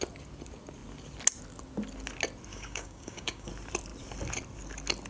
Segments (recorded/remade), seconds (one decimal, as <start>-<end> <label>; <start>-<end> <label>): 0.0-2.5 recorded; 2.5-3.5 remade; 3.5-5.1 recorded